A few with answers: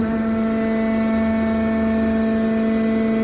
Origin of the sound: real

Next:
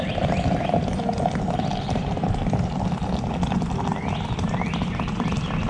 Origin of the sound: real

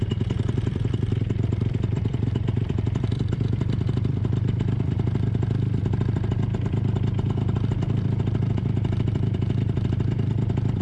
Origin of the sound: fake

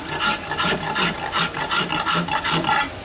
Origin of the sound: real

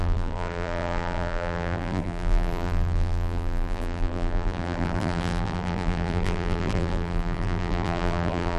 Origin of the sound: fake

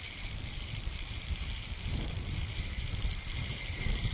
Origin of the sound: fake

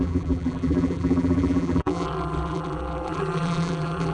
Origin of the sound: fake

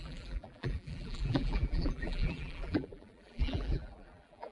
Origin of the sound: fake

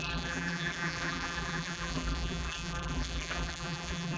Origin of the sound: fake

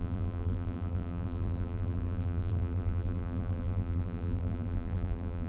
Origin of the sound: fake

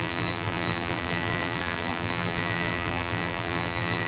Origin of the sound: fake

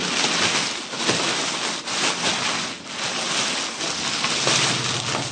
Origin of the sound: real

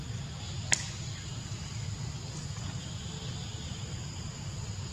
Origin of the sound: real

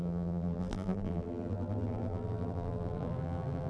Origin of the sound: fake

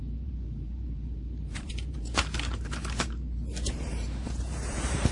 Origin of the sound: fake